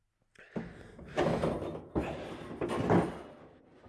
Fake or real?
real